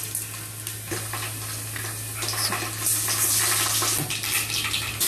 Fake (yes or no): no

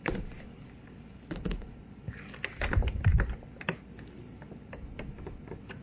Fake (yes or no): no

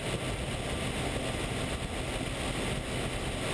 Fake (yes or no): no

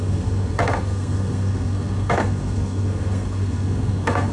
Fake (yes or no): yes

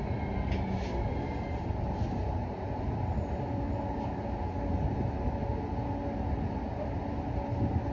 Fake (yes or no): no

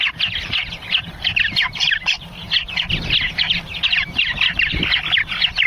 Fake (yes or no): no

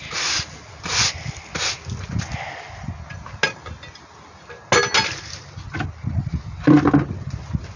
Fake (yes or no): no